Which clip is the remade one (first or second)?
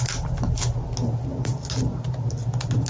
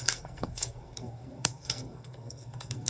second